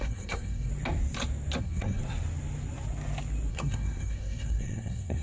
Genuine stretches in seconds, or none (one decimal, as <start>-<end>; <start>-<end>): 0.7-1.6; 2.0-3.5